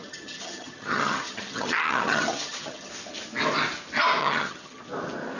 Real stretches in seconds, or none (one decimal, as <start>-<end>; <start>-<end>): 2.9-4.2; 4.8-5.4

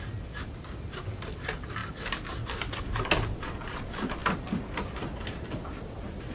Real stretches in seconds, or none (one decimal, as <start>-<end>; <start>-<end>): 0.0-6.3

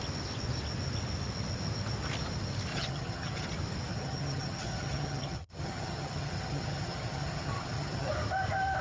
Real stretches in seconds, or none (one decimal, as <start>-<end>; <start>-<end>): 0.0-2.7; 3.5-3.9; 8.1-8.8

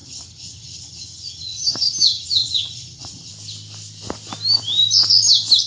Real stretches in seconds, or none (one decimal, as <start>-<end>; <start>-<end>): 3.3-5.7

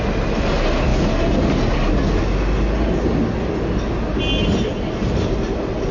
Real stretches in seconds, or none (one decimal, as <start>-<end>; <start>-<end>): 0.0-5.9